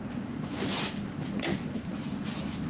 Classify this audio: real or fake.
real